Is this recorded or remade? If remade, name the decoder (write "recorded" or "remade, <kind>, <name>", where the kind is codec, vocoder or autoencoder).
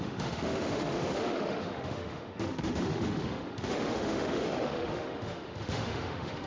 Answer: remade, autoencoder, DAC-VAE